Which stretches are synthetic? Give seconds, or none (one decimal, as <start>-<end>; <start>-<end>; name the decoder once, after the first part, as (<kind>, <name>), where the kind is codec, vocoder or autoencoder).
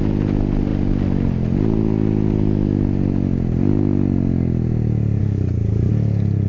5.2-5.9 (codec, DAC)